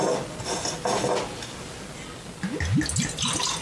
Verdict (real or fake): real